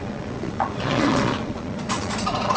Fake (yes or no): yes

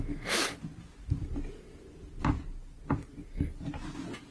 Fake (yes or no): no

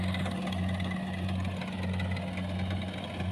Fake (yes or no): no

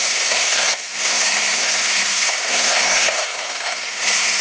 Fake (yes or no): yes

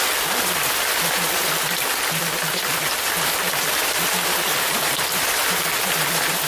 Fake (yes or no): yes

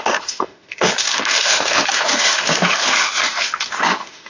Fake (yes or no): yes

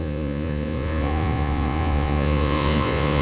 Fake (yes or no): yes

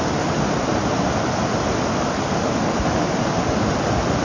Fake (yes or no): no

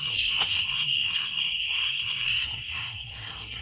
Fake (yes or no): yes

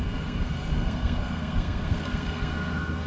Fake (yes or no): yes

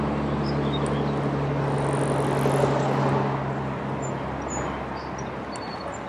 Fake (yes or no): no